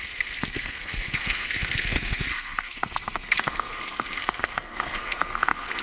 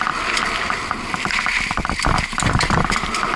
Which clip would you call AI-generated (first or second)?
first